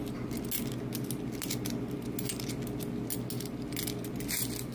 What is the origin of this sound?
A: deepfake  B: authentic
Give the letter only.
B